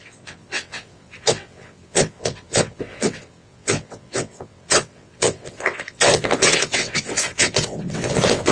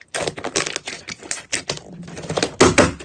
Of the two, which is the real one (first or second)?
second